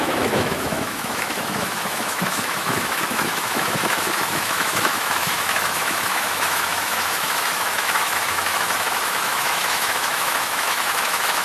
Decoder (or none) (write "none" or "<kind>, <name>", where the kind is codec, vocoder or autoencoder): autoencoder, DAC-VAE